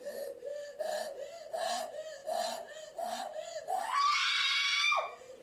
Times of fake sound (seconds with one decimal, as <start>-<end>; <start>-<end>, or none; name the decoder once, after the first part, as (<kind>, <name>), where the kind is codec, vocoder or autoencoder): none